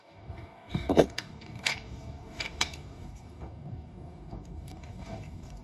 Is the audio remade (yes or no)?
yes